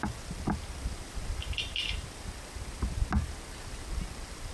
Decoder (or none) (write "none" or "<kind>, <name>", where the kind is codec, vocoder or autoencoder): none